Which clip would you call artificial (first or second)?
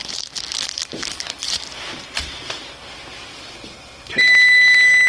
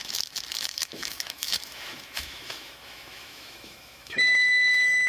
second